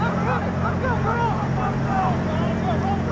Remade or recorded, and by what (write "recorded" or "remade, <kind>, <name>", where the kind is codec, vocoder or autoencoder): recorded